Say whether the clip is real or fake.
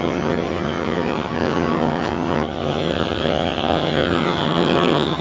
fake